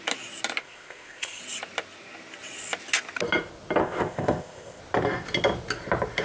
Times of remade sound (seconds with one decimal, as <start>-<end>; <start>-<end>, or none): 0.6-1.4; 3.8-4.8